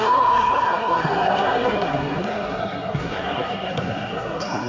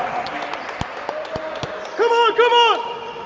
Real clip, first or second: second